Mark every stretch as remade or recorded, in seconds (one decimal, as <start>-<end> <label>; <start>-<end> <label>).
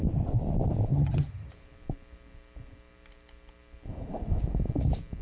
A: 0.0-0.9 recorded; 0.9-1.5 remade; 1.5-5.2 recorded